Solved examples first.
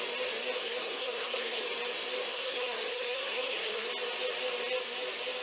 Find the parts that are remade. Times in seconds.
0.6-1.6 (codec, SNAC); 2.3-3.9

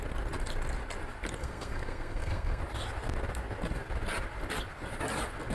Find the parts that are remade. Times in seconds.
1.4-2.6 (codec, SNAC)

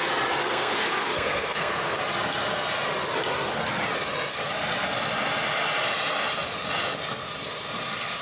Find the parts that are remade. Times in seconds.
0.4-2.0 (codec, SNAC)

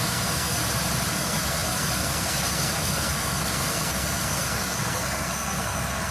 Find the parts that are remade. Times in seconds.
0.0-0.6 (codec, SNAC); 1.1-6.1

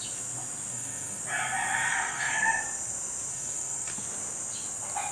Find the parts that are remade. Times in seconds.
0.7-1.2 (codec, SNAC); 1.9-2.6; 3.3-3.9

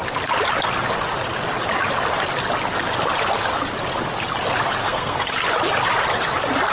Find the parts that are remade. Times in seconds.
4.8-5.3 (codec, SNAC)